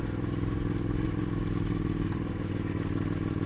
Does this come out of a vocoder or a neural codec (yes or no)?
no